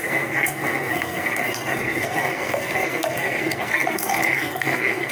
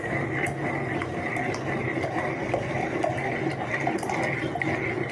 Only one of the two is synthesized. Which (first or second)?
first